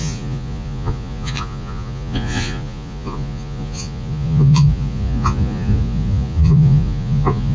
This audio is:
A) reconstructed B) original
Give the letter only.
A